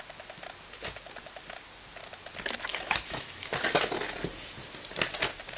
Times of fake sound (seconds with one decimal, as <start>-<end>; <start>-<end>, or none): 2.7-3.5